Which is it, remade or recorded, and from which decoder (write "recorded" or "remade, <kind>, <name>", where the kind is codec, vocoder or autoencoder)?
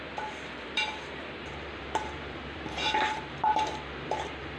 remade, vocoder, BigVGAN v2